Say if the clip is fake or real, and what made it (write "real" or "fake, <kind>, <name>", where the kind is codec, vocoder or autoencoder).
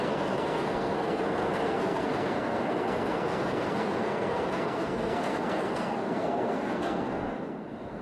fake, codec, SNAC